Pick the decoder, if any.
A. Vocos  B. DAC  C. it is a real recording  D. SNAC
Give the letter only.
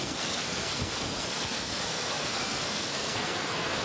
D